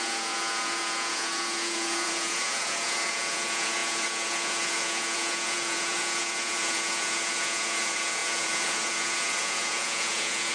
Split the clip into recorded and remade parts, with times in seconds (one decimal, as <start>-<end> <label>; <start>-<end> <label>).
0.0-10.5 remade